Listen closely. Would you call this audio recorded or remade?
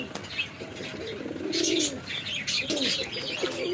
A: recorded